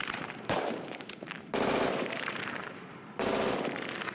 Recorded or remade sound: remade